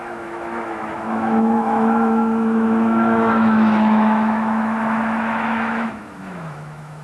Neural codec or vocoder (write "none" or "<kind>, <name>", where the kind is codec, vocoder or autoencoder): autoencoder, DAC-VAE